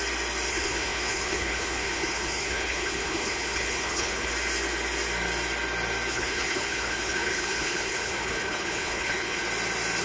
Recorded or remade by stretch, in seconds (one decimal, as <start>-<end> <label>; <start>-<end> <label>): 0.0-0.5 recorded; 0.5-4.3 remade; 4.3-6.1 recorded; 6.1-9.4 remade; 9.4-10.0 recorded